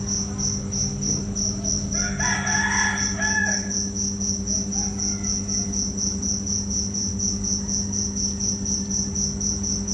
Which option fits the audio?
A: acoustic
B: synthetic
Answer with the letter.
A